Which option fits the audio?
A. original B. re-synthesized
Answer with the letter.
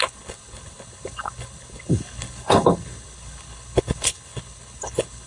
B